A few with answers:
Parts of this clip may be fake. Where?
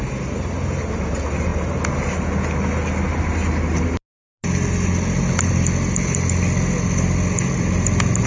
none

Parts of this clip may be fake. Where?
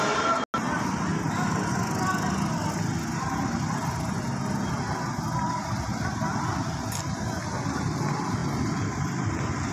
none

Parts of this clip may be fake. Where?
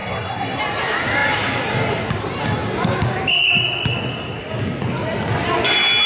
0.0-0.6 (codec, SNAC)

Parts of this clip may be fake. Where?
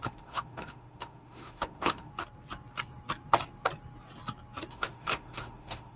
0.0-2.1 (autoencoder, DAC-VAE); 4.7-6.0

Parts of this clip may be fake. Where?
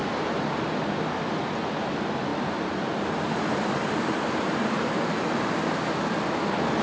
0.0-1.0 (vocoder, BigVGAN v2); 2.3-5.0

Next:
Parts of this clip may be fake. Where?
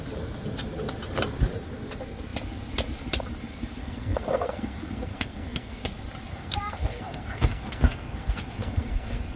3.8-5.8 (codec, SNAC); 6.3-9.4